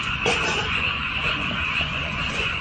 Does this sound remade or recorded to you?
remade